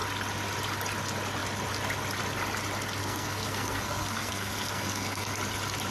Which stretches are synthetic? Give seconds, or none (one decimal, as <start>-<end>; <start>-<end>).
3.0-5.3